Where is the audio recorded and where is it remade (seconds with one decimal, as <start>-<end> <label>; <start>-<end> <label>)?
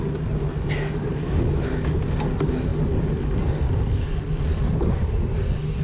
0.0-5.8 recorded